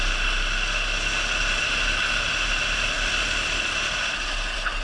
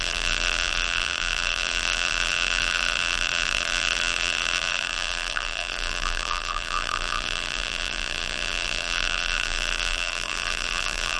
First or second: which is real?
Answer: first